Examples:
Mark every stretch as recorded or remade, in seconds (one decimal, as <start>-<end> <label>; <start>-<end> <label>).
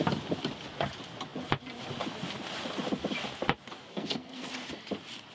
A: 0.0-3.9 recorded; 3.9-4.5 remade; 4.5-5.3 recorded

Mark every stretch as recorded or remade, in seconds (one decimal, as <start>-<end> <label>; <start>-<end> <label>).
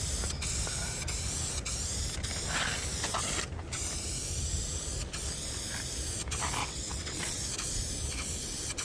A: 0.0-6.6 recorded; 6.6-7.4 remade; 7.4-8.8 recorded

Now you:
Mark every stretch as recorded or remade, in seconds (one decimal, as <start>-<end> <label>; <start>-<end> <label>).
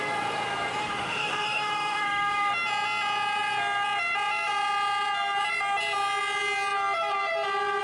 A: 0.0-0.8 recorded; 0.8-2.5 remade; 2.5-7.8 recorded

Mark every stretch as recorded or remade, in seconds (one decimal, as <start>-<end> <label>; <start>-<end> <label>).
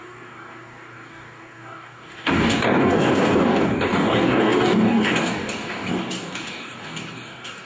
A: 0.0-7.7 remade